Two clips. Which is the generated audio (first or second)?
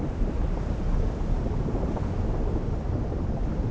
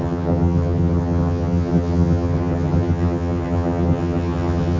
second